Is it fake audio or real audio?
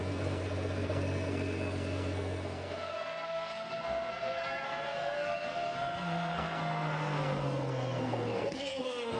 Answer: fake